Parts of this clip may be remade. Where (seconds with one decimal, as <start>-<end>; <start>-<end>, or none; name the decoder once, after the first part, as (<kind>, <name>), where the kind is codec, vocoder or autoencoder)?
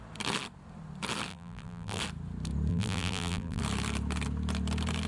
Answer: 1.3-2.0 (vocoder, BigVGAN v2); 2.7-3.6